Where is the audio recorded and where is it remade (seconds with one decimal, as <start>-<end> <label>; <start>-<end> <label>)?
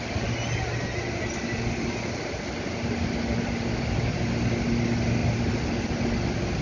0.0-6.6 recorded